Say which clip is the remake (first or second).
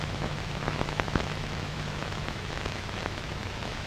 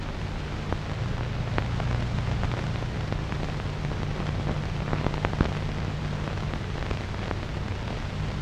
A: first